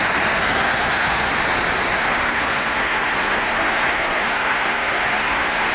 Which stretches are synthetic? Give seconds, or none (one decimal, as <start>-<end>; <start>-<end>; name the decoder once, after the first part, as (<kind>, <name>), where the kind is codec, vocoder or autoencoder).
0.4-1.3 (codec, SNAC); 2.0-5.7